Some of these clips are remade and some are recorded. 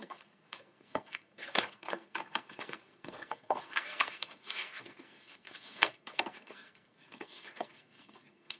remade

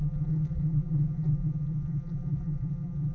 remade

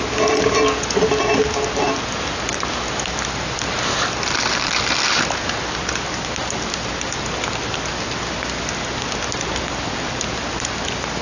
recorded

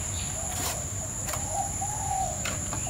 remade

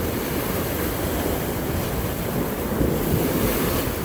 recorded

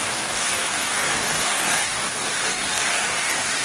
remade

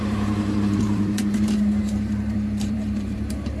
remade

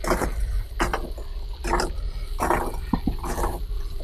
recorded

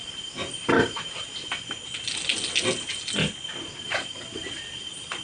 recorded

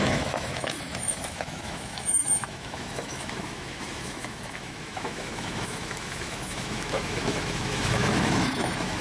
remade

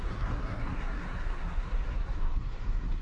remade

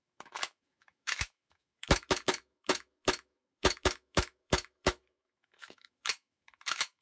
remade